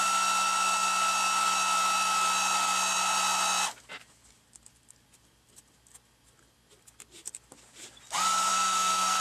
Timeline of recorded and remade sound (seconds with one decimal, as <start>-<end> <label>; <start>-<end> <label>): 0.0-8.5 recorded; 8.5-9.2 remade